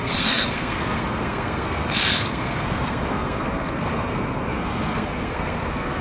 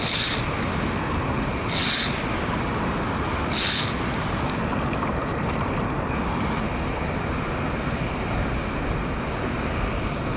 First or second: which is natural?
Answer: second